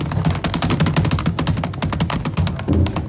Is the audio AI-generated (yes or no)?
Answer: no